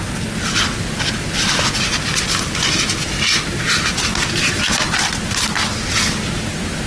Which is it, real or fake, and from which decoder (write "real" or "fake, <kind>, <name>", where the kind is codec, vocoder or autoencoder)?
real